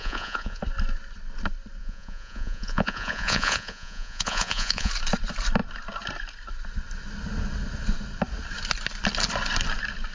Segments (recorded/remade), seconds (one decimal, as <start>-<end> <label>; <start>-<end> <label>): 0.0-0.6 remade; 0.6-1.8 recorded; 1.8-4.9 remade; 4.9-10.1 recorded